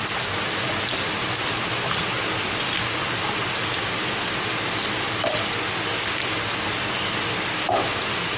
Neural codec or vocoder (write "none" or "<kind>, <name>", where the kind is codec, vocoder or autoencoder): none